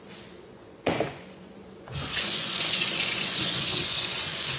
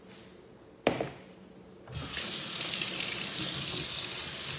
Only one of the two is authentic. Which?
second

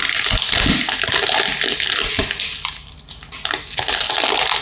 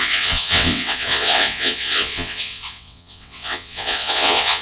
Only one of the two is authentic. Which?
first